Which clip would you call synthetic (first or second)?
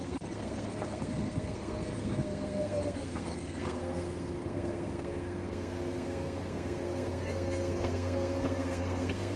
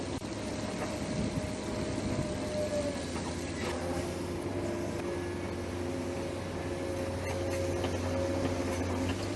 first